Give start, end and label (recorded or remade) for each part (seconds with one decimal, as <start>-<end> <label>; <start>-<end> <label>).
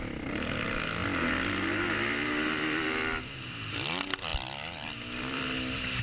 0.0-4.3 recorded; 4.3-6.0 remade